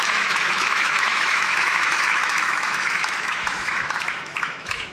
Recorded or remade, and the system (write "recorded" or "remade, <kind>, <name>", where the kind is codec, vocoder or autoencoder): remade, autoencoder, DAC-VAE